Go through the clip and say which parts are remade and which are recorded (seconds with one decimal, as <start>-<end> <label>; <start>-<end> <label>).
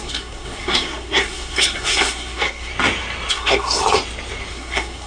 0.0-2.7 remade; 2.7-3.3 recorded; 3.3-3.8 remade; 3.8-4.5 recorded; 4.5-5.1 remade